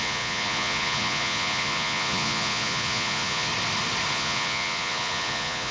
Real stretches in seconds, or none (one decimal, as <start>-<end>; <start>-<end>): 3.5-4.1